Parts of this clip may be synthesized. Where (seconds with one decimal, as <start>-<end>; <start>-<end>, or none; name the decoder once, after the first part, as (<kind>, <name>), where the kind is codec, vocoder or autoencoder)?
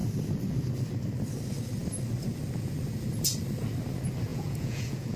4.3-5.2 (vocoder, Vocos)